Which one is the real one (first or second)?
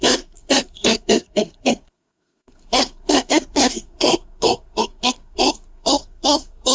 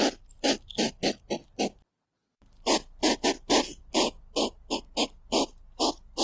second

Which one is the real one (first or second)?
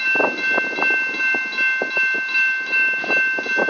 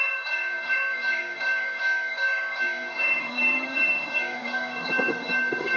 first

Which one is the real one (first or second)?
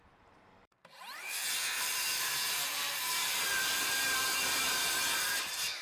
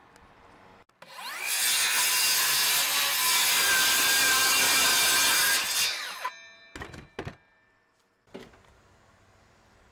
second